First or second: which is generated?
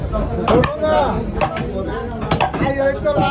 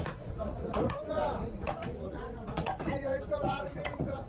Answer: second